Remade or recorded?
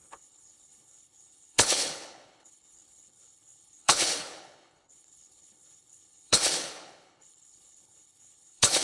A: remade